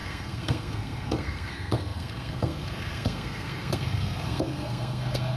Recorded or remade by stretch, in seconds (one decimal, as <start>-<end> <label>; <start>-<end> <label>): 0.0-5.4 remade